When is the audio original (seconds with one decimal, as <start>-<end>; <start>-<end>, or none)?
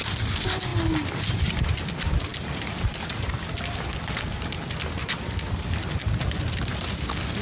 0.0-7.4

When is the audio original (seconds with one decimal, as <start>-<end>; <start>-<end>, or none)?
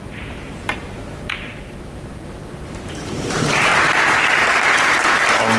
1.5-2.8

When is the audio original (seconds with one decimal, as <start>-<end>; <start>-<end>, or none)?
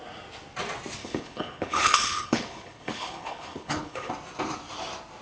0.0-1.0; 4.1-5.2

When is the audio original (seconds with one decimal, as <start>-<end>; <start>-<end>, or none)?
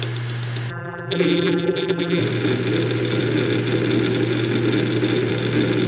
0.0-0.7; 2.2-5.9